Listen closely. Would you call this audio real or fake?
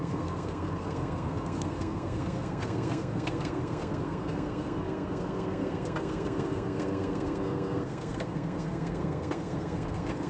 fake